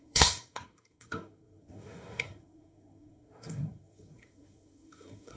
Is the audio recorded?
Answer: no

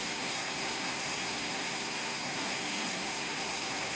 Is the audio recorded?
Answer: no